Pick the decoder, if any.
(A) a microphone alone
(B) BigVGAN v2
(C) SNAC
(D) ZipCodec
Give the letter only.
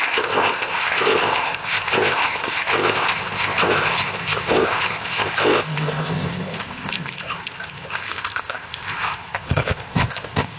D